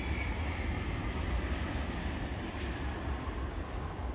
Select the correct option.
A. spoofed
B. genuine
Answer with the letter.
B